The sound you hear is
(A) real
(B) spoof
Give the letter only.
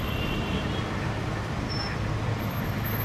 B